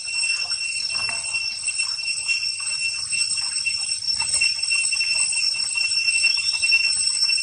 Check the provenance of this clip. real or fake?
real